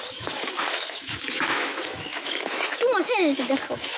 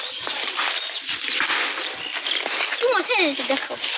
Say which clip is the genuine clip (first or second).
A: second